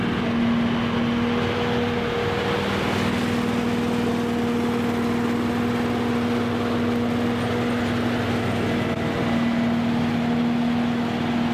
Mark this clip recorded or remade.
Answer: recorded